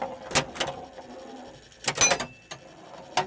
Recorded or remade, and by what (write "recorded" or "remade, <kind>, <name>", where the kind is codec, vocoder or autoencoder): recorded